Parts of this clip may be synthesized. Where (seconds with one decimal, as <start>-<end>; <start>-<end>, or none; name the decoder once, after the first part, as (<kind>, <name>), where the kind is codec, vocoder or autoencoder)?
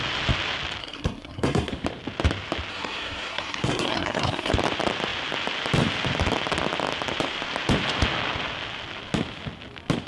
0.8-1.7 (codec, SNAC); 2.7-4.5